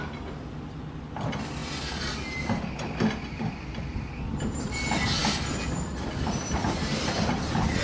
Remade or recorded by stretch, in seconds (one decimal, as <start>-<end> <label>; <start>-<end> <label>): 0.0-6.6 recorded; 6.6-7.2 remade; 7.2-7.8 recorded